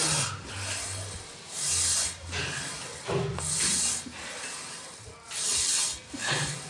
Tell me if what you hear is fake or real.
real